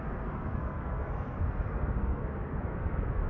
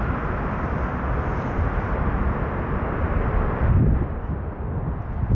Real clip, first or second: second